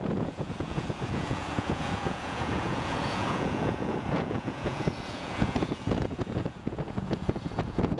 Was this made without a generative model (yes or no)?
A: no